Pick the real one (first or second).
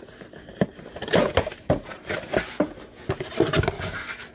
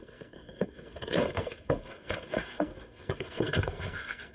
first